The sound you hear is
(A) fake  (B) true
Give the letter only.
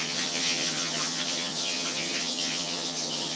A